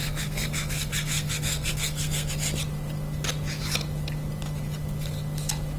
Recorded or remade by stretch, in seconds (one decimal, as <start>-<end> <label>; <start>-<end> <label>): 0.0-2.3 remade; 2.3-5.8 recorded